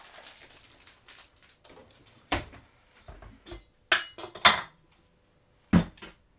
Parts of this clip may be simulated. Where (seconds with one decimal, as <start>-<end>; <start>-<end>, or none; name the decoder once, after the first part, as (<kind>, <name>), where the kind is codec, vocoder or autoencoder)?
1.8-3.1 (vocoder, BigVGAN v2)